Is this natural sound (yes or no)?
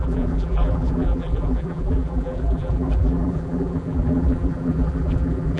no